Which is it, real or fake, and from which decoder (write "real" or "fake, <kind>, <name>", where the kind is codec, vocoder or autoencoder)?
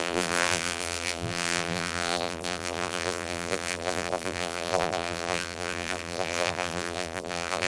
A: fake, vocoder, BigVGAN v2